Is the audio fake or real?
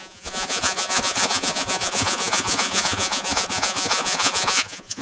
fake